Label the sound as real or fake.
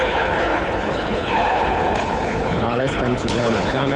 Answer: fake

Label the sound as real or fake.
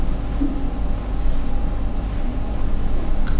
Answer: real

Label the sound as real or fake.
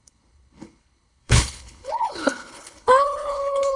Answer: fake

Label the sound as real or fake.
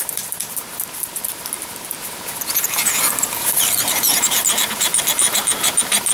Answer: fake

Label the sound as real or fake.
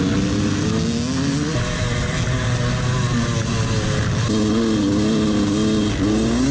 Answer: real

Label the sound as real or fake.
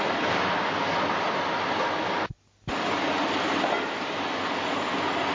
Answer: real